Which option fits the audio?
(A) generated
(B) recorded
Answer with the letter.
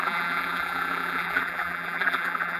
A